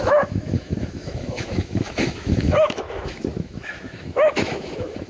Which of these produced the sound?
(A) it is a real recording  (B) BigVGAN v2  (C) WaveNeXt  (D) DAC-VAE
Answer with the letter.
D